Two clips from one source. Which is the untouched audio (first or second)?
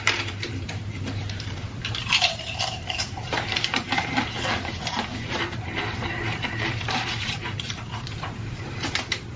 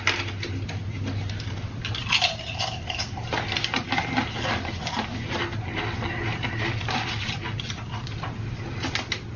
second